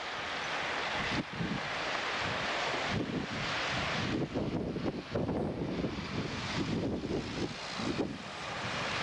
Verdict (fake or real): real